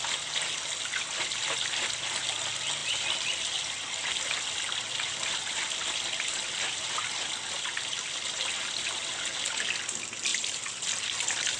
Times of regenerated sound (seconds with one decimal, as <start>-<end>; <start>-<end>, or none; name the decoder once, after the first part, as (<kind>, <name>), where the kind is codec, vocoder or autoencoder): 10.3-11.0 (vocoder, BigVGAN v2)